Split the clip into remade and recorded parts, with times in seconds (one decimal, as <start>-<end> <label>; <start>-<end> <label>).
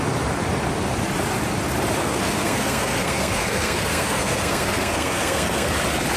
0.0-2.0 recorded; 2.0-5.7 remade; 5.7-6.2 recorded